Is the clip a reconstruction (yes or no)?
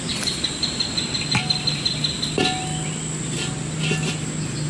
no